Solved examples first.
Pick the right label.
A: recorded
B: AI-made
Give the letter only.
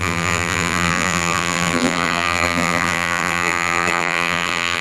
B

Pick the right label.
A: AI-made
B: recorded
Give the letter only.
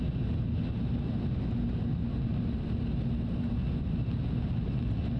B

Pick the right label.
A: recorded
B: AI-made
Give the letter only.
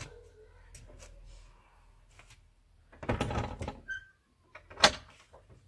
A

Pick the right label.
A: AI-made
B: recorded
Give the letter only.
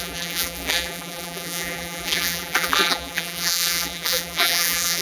A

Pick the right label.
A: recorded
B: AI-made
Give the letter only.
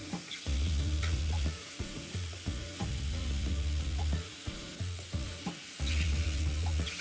B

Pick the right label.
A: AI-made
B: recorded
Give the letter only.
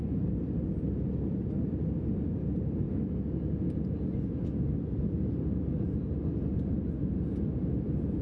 B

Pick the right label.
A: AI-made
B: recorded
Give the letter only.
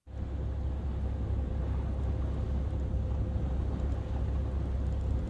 B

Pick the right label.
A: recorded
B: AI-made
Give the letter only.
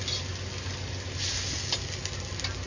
A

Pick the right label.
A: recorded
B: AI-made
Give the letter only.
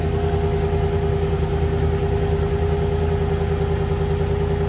A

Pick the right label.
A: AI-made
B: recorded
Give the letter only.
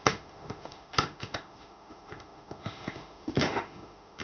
A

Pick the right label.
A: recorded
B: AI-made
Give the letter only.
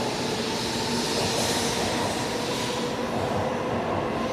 A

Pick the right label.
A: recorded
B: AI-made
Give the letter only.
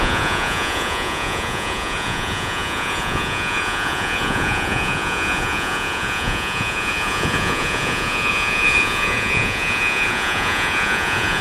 B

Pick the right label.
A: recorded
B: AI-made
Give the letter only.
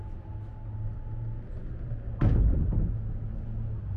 A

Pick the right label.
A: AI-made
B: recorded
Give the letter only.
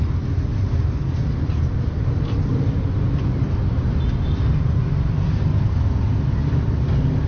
B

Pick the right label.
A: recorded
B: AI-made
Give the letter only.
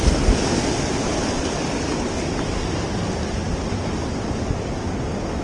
A